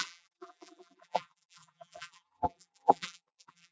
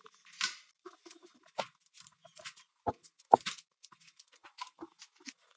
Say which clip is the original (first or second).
second